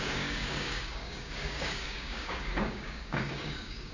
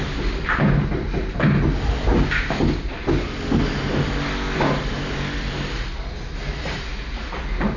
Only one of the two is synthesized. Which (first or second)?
first